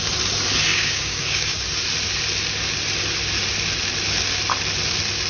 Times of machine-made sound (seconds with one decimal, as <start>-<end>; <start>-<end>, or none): 0.7-1.6